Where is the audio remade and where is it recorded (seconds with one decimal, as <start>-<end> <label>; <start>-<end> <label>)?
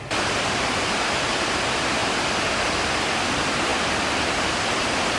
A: 0.0-2.0 remade; 2.0-3.0 recorded; 3.0-5.2 remade